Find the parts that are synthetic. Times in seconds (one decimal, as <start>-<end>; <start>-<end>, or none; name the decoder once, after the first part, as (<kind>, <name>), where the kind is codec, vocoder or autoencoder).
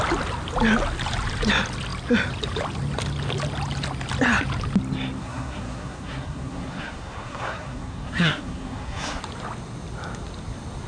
5.2-9.2 (codec, SNAC)